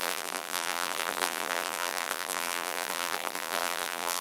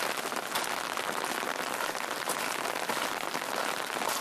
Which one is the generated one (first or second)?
first